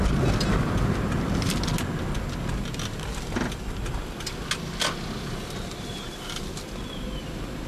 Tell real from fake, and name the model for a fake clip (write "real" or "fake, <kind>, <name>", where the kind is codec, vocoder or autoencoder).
real